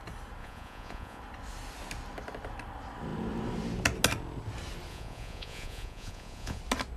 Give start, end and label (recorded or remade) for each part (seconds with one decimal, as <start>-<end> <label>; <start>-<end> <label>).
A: 0.0-0.4 recorded; 0.4-1.2 remade; 1.2-4.9 recorded; 4.9-6.6 remade; 6.6-7.0 recorded